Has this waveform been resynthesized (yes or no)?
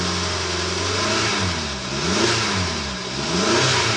no